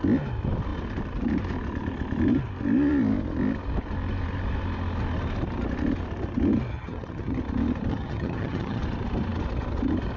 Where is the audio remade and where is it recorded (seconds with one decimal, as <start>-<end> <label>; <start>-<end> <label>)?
0.0-6.7 recorded; 6.7-7.4 remade; 7.4-7.9 recorded; 7.9-8.8 remade; 8.8-10.2 recorded